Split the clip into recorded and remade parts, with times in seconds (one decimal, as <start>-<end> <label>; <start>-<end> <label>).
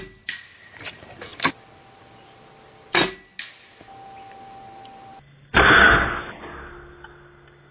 0.0-7.7 recorded